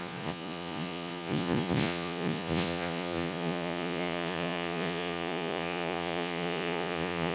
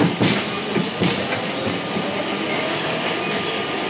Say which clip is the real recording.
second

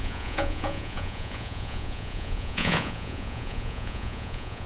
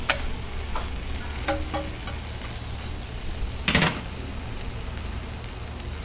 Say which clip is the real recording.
second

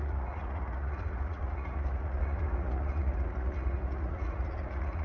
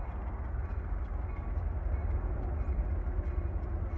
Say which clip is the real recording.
second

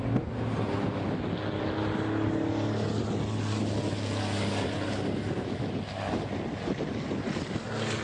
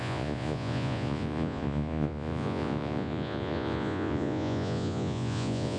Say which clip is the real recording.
first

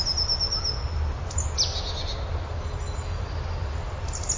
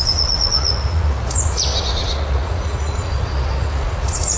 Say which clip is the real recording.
first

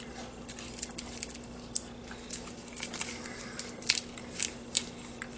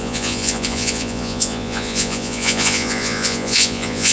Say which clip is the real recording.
first